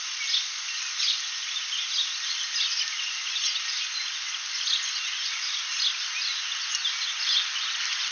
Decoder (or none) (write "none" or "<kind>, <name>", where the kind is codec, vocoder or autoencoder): none